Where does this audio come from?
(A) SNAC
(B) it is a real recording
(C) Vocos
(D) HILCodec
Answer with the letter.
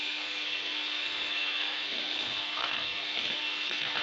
A